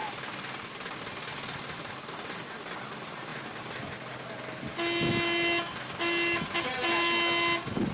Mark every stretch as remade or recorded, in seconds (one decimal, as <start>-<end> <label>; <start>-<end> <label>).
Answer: 0.0-7.9 recorded